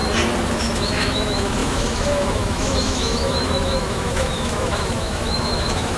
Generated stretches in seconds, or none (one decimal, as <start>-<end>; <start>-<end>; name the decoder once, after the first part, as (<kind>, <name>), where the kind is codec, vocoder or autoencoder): 0.5-6.0 (autoencoder, DAC-VAE)